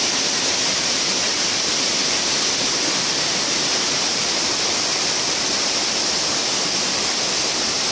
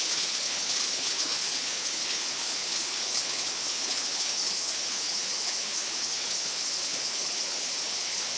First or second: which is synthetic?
second